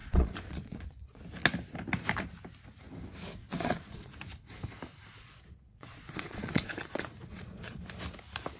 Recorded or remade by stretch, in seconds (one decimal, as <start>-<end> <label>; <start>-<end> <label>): 0.0-1.2 remade; 1.2-3.4 recorded; 3.4-4.1 remade; 4.1-5.2 recorded; 5.2-7.8 remade; 7.8-8.6 recorded